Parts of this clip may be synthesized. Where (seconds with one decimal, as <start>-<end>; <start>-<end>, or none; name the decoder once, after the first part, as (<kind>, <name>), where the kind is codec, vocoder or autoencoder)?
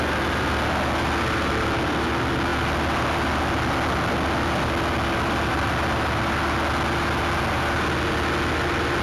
none